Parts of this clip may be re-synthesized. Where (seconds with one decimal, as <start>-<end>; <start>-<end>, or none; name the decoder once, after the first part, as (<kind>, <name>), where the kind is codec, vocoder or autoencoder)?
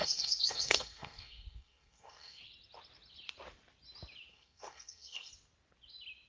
0.0-2.4 (codec, SNAC); 4.3-5.3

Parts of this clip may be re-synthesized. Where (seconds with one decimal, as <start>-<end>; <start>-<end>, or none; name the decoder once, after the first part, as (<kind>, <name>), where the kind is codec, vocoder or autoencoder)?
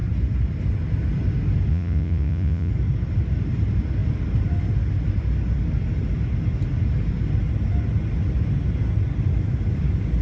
1.7-2.7 (vocoder, Vocos)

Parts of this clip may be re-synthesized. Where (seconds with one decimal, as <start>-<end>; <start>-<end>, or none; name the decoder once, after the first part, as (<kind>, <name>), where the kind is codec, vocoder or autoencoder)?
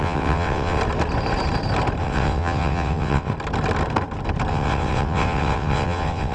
0.0-0.8 (vocoder, WaveNeXt); 2.0-3.3; 4.5-6.3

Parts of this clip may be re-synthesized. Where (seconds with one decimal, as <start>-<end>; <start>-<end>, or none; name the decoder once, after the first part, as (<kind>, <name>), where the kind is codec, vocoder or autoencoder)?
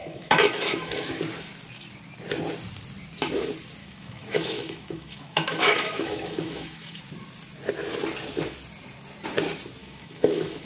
0.0-1.2 (autoencoder, DAC-VAE); 3.8-7.0; 9.8-10.7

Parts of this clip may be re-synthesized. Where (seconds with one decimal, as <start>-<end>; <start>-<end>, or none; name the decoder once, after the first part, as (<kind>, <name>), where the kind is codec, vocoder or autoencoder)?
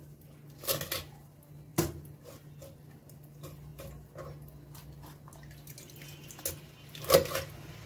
none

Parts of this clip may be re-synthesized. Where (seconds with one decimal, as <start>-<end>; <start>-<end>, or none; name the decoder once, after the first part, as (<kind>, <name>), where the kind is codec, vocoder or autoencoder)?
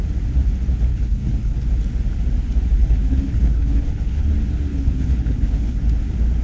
0.9-1.6 (codec, HILCodec); 2.8-4.3; 4.7-5.8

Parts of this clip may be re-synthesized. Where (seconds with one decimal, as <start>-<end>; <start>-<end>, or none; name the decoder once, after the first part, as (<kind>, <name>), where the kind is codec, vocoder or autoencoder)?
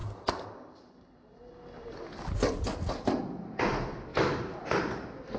4.1-4.8 (vocoder, BigVGAN v2)